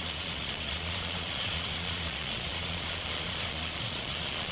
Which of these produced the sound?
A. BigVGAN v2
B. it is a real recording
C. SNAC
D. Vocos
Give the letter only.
D